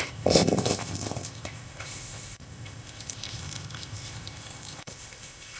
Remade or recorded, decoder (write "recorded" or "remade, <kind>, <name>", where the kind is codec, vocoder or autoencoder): remade, codec, ZipCodec